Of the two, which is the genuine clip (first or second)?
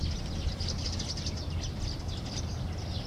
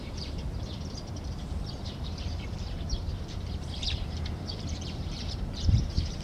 first